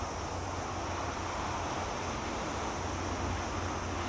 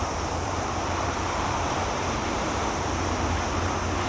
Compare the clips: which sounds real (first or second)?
first